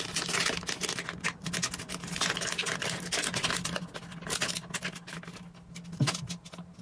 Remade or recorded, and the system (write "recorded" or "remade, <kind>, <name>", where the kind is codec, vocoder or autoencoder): recorded